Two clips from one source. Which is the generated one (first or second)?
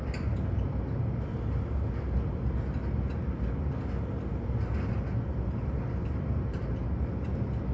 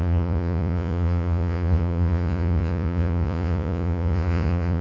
second